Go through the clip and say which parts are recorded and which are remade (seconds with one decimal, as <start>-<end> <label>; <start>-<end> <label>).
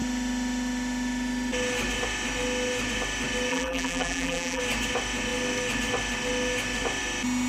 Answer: 0.0-3.5 recorded; 3.5-4.6 remade; 4.6-7.5 recorded